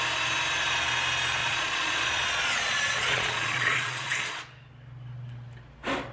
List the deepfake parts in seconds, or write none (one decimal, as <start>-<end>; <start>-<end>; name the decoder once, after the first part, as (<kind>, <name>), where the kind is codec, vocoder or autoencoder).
1.4-4.3 (vocoder, Vocos)